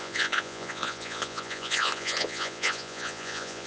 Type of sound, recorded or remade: remade